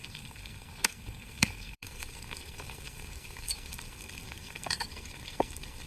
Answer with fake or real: fake